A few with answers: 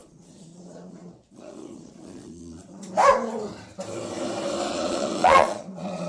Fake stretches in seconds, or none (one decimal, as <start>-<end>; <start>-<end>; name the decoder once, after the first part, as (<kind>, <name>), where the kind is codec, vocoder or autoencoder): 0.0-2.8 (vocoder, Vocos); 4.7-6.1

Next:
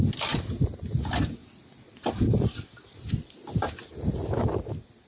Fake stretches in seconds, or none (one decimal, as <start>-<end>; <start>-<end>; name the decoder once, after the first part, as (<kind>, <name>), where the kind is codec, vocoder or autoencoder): 1.4-3.9 (vocoder, BigVGAN v2)

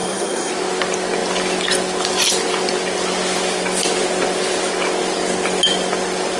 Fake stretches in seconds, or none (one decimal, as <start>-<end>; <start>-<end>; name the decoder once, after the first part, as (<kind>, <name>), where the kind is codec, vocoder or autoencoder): 0.0-0.5 (codec, SNAC)

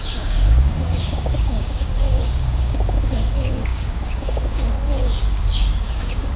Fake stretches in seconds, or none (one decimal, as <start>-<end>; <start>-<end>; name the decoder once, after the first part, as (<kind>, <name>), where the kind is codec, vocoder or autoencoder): 0.0-6.4 (codec, DAC)

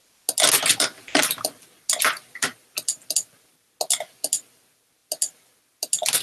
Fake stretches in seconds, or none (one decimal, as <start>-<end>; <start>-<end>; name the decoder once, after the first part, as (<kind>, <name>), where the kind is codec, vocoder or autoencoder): none

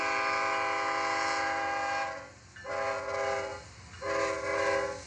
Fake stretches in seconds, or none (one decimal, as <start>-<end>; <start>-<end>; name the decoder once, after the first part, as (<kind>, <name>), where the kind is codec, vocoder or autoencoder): none

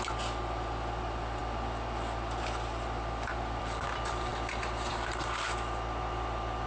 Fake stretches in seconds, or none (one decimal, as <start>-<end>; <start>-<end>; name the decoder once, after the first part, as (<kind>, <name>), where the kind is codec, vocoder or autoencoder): none

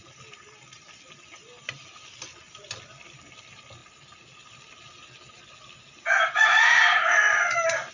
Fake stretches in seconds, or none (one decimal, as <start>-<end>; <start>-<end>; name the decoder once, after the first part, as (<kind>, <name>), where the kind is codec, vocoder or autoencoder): 0.0-3.8 (vocoder, BigVGAN v2)